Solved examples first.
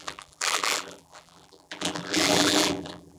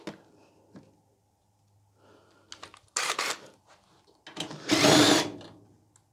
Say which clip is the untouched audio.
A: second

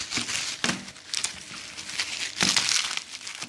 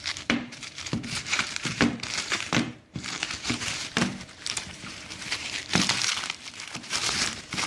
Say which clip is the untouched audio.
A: first